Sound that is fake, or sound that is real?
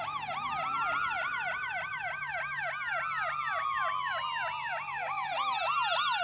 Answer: real